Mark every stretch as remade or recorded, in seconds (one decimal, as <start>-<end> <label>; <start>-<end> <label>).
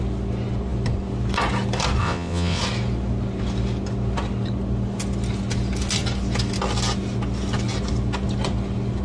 0.0-2.0 recorded; 2.0-2.6 remade; 2.6-9.0 recorded